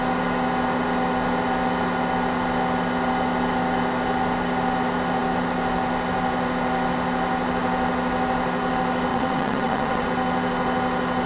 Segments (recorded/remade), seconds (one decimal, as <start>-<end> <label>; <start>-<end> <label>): 0.0-9.1 recorded; 9.1-10.1 remade; 10.1-11.3 recorded